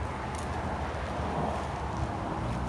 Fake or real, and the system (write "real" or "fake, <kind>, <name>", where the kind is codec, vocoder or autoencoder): real